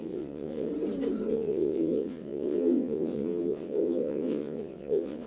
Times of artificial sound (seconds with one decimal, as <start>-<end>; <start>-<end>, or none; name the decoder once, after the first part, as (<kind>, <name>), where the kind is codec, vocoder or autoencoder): 0.0-0.7 (vocoder, WaveNeXt); 1.3-5.3